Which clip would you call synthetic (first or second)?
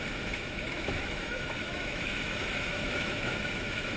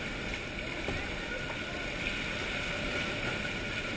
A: first